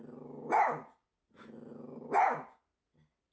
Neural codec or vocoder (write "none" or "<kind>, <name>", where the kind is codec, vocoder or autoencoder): none